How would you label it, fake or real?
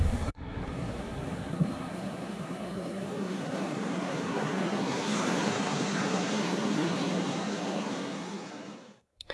fake